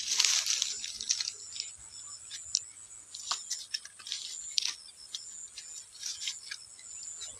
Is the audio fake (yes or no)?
no